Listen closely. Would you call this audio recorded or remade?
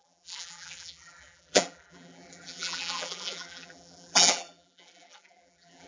remade